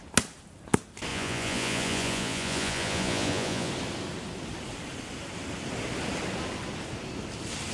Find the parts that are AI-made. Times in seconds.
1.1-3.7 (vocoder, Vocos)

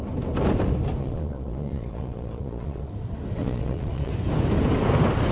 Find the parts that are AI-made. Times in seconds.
1.0-2.9 (vocoder, Vocos); 3.4-4.1

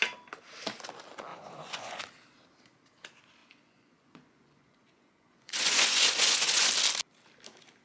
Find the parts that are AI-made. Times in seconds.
1.3-2.0 (vocoder, Vocos); 3.4-6.7

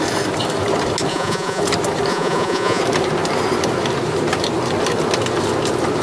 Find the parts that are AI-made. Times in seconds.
1.1-1.6 (vocoder, Vocos); 2.1-2.8